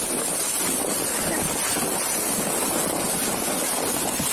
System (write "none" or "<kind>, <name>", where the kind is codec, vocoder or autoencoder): none